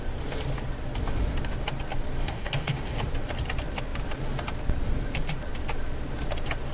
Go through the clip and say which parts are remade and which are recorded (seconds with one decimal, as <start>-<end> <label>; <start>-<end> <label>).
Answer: 0.0-2.2 recorded; 2.2-3.0 remade; 3.0-6.7 recorded